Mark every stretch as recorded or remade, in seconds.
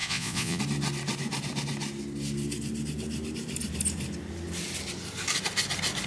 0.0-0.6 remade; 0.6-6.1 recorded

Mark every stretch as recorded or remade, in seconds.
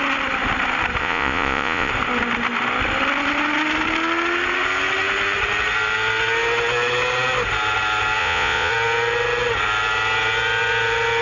0.0-1.0 recorded; 1.0-1.9 remade; 1.9-8.2 recorded; 8.2-8.7 remade; 8.7-11.2 recorded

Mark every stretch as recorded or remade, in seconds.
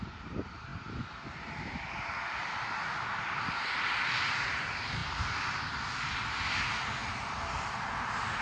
0.0-5.0 recorded; 5.0-6.6 remade; 6.6-7.0 recorded; 7.0-7.9 remade; 7.9-8.4 recorded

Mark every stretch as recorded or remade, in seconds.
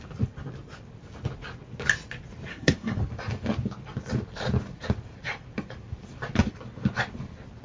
0.0-2.5 recorded; 2.5-3.0 remade; 3.0-7.6 recorded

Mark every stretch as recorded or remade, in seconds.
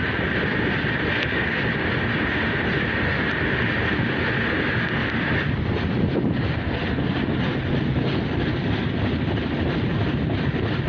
0.0-1.1 recorded; 1.1-1.6 remade; 1.6-10.9 recorded